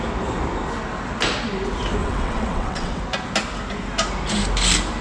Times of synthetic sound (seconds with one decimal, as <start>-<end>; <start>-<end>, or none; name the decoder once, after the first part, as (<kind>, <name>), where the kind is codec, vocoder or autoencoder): 2.0-3.0 (vocoder, WaveNeXt)